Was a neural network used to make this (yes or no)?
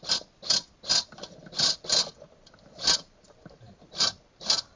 no